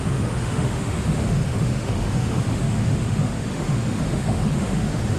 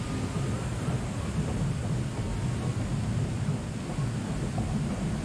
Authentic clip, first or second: second